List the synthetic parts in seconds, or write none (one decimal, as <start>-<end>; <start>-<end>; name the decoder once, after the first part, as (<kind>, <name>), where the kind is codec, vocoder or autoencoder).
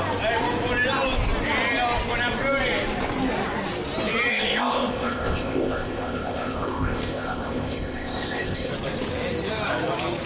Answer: 4.3-8.7 (codec, ZipCodec)